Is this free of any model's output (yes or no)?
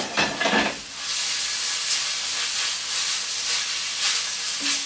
yes